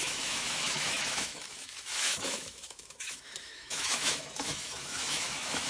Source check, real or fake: fake